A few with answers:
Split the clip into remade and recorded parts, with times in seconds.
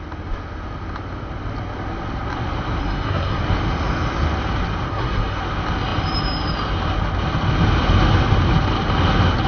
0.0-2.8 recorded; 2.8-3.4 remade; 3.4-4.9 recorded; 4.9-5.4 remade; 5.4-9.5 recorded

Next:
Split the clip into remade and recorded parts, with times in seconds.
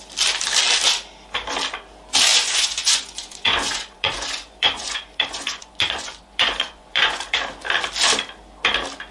0.0-2.3 recorded; 2.3-7.4 remade; 7.4-9.1 recorded